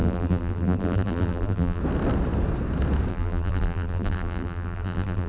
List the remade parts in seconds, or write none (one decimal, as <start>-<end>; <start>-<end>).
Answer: 0.0-1.8; 3.1-5.3